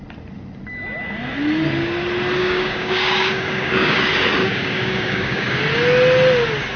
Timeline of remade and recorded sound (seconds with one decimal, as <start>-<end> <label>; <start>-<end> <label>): 0.0-2.4 recorded; 2.4-4.0 remade; 4.0-4.4 recorded; 4.4-5.6 remade; 5.6-6.8 recorded